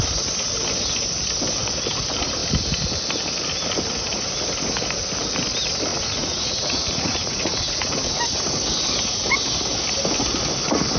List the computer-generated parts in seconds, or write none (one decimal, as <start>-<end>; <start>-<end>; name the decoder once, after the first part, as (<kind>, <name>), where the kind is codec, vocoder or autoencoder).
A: 5.9-8.2 (vocoder, Vocos)